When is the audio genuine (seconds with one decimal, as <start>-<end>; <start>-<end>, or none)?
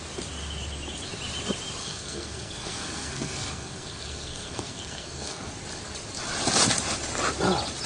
0.0-1.8; 5.5-7.9